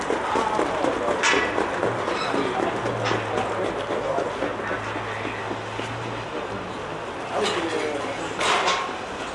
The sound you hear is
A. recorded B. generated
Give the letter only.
A